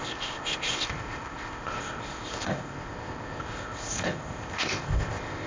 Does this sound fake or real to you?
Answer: fake